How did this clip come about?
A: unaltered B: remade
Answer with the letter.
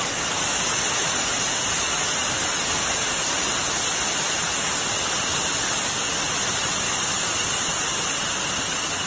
A